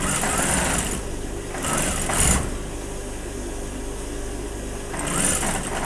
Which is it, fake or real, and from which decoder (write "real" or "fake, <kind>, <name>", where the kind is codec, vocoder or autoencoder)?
real